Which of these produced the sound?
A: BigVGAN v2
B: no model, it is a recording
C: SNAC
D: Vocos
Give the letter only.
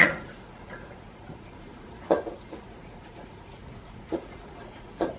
D